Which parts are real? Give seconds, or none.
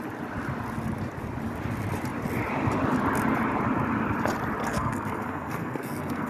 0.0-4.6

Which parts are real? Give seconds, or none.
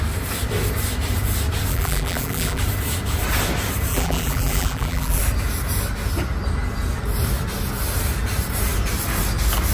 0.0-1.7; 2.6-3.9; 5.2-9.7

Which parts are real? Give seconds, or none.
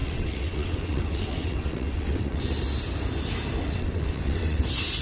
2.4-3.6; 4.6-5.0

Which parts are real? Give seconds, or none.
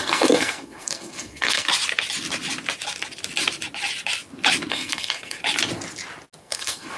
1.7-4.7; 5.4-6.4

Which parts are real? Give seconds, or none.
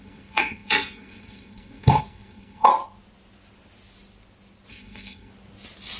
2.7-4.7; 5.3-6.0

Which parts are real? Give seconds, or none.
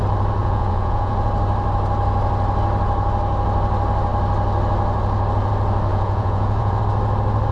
0.0-0.4; 1.3-5.9; 6.8-7.5